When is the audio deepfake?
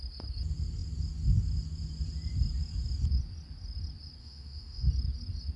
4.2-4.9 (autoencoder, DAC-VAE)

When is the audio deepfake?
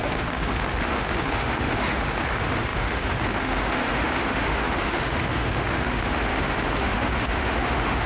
0.0-8.1 (autoencoder, DAC-VAE)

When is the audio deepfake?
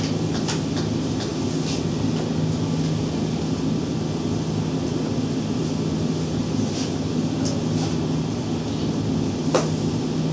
none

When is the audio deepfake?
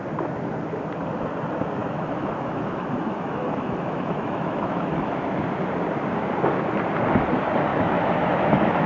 1.8-5.4 (autoencoder, DAC-VAE); 7.7-8.9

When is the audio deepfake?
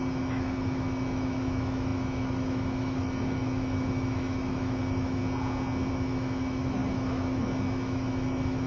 0.0-5.2 (autoencoder, DAC-VAE); 5.9-8.7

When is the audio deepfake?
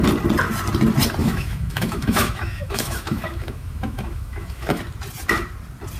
1.2-4.8 (autoencoder, DAC-VAE)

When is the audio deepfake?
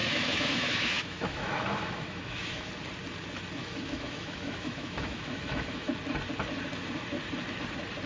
0.0-2.7 (autoencoder, DAC-VAE); 3.6-5.9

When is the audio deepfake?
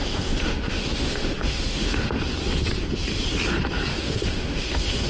0.0-2.2 (autoencoder, DAC-VAE); 3.9-5.1